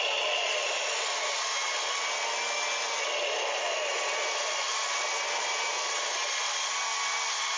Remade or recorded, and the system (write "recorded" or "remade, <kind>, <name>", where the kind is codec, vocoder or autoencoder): recorded